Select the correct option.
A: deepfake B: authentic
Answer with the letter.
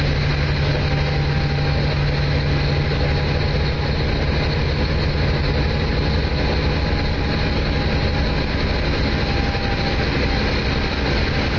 B